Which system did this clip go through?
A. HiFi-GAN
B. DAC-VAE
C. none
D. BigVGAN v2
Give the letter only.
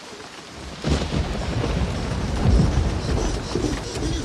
D